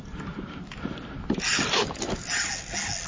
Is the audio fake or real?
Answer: real